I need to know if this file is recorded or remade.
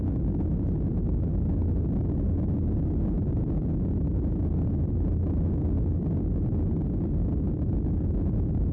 recorded